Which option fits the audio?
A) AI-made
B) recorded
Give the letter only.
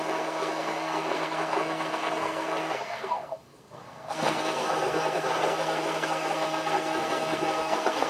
A